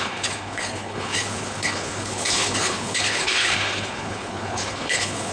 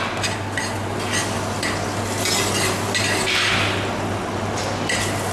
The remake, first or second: first